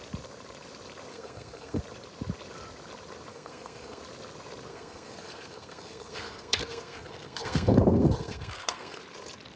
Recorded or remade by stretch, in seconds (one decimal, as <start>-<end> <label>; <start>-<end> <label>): 0.0-1.1 recorded; 1.1-1.8 remade; 1.8-3.3 recorded; 3.3-4.0 remade; 4.0-4.7 recorded; 4.7-9.0 remade; 9.0-9.6 recorded